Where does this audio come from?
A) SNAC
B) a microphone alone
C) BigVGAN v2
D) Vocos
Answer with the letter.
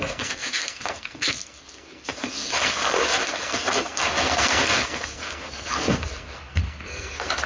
A